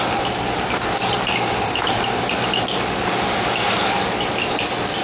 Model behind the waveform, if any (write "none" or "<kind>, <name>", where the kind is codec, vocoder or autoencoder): none